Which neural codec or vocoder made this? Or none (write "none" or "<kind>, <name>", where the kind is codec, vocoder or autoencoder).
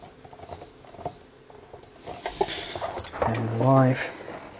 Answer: none